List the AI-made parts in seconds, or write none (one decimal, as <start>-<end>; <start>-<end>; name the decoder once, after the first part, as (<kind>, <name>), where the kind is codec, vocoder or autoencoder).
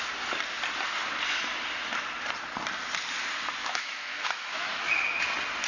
3.6-4.9 (autoencoder, DAC-VAE)